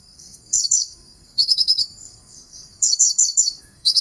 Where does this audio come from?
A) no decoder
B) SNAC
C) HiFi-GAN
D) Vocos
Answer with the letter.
B